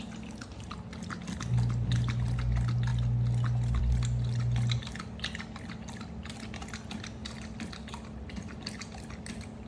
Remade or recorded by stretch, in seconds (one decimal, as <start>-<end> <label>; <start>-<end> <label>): 0.0-9.7 recorded